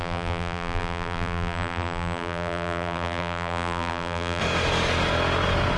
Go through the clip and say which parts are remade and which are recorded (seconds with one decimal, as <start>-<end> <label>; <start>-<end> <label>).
0.0-4.4 remade; 4.4-5.8 recorded